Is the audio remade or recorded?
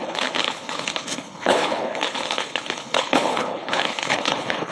remade